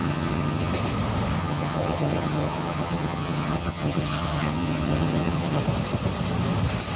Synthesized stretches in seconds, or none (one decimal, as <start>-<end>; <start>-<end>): 0.0-0.7; 1.4-5.6